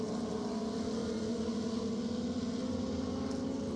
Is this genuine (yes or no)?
yes